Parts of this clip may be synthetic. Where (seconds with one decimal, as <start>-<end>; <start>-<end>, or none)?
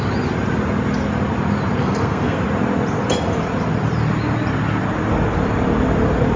1.8-2.4